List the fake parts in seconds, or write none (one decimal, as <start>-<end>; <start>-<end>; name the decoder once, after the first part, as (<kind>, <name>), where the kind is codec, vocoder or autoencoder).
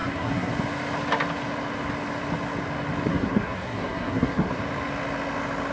0.0-0.5 (codec, SNAC); 3.1-4.6